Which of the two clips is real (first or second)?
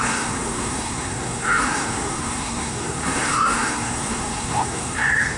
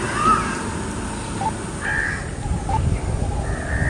second